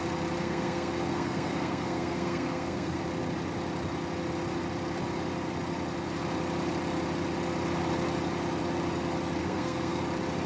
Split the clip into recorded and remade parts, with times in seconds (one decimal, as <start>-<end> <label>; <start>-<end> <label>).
0.0-0.4 recorded; 0.4-3.0 remade; 3.0-9.4 recorded; 9.4-10.0 remade; 10.0-10.5 recorded